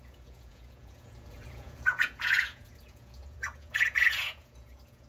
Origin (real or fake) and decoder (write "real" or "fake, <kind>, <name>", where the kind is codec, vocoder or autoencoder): fake, vocoder, Vocos